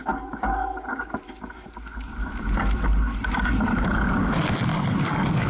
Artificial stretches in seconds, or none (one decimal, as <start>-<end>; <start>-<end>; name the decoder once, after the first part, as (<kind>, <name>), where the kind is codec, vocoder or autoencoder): 4.7-5.5 (codec, DAC)